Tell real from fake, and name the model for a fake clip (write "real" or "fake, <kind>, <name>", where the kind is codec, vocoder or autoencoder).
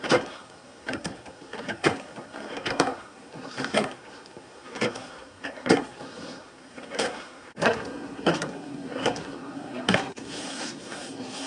fake, codec, SNAC